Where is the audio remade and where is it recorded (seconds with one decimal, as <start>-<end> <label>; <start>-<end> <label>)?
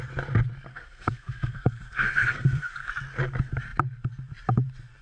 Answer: 0.0-0.7 recorded; 0.7-2.9 remade; 2.9-5.0 recorded